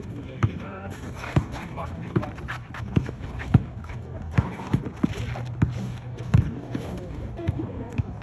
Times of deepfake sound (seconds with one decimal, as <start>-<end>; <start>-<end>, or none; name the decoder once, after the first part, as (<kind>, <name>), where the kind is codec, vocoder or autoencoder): 0.0-2.2 (codec, DAC); 2.8-4.8; 5.8-8.2